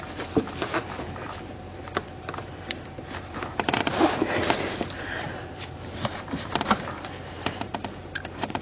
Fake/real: fake